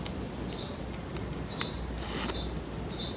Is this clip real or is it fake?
real